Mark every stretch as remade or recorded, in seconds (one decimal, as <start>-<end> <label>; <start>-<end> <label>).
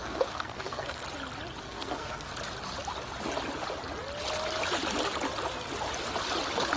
0.0-1.0 remade; 1.0-1.6 recorded; 1.6-2.3 remade; 2.3-6.8 recorded